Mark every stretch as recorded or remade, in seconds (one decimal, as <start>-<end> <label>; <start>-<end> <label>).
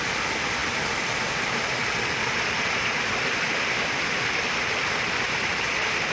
0.0-0.6 recorded; 0.6-3.6 remade; 3.6-6.1 recorded